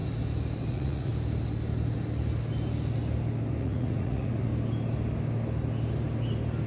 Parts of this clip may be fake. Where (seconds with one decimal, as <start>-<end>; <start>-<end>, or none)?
0.7-1.1; 3.6-4.5